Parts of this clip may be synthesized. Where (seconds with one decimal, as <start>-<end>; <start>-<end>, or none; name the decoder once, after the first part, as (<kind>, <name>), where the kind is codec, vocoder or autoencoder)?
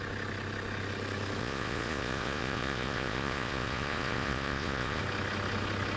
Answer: 1.4-5.0 (vocoder, Vocos)